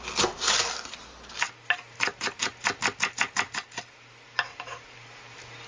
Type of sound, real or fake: real